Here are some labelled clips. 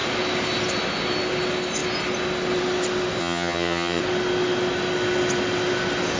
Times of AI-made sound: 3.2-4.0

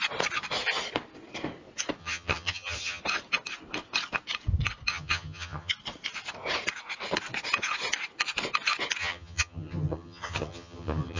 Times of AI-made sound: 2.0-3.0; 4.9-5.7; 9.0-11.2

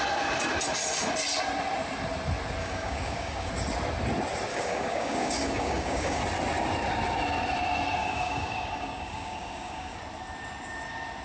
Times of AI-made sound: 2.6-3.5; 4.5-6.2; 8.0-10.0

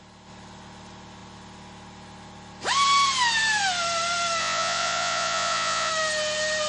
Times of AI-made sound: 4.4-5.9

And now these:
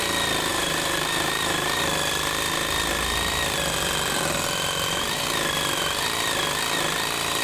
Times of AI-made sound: 0.5-1.8

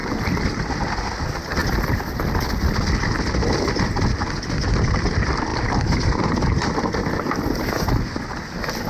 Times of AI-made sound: 0.0-0.9; 1.6-2.2; 5.5-7.7

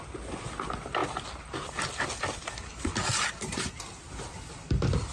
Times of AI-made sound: none

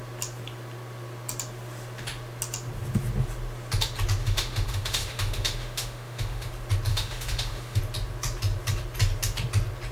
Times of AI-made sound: 4.2-6.5; 6.9-7.8